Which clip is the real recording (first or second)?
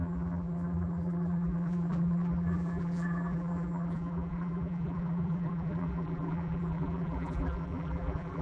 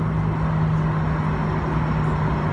second